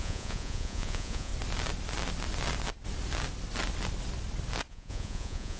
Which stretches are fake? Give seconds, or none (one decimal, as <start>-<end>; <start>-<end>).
0.0-1.3; 4.7-5.6